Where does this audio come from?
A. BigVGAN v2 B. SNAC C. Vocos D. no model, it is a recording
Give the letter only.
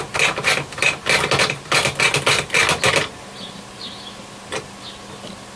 D